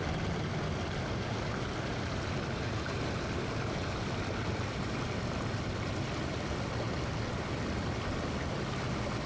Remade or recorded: recorded